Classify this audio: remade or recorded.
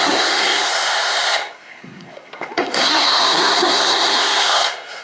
remade